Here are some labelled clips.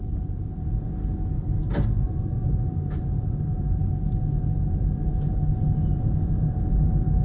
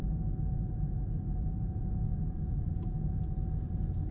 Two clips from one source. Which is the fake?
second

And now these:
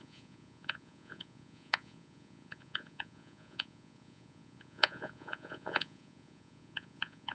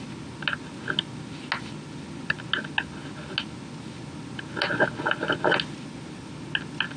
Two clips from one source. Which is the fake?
first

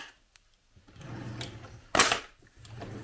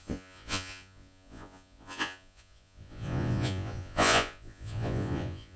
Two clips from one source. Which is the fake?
second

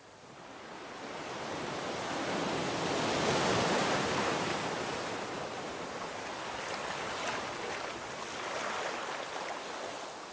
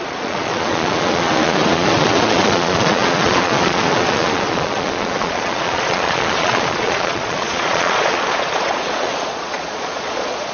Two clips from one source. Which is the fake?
second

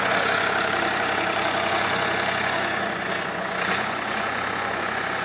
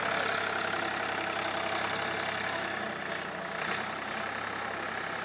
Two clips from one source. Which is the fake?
first